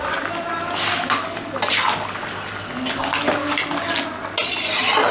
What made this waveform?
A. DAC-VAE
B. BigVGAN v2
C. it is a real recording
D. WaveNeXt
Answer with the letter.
C